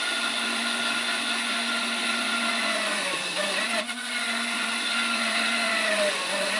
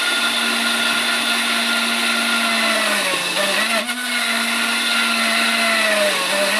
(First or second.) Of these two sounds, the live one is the second